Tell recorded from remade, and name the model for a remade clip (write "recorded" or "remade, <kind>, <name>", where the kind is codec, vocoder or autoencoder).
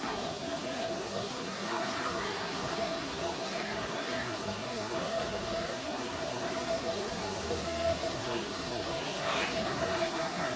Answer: remade, codec, SNAC